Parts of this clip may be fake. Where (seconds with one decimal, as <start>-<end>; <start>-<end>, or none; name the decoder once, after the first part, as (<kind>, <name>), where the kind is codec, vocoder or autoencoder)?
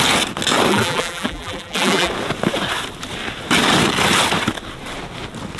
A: 0.7-2.1 (vocoder, BigVGAN v2)